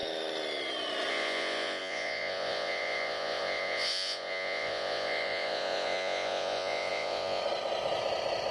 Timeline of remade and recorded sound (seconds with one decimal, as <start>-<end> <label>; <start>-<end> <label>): 0.0-1.1 recorded; 1.1-7.4 remade; 7.4-8.5 recorded